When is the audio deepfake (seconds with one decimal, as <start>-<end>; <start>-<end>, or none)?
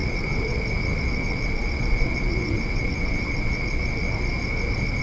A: 0.0-0.6; 1.1-4.1